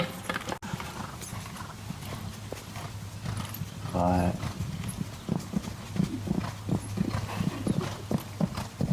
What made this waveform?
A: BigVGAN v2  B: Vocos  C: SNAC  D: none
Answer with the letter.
D